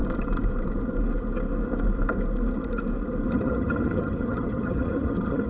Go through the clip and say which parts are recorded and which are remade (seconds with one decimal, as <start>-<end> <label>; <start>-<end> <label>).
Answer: 0.0-3.3 recorded; 3.3-5.5 remade